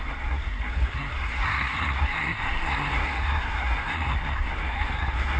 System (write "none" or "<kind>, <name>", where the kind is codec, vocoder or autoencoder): codec, SNAC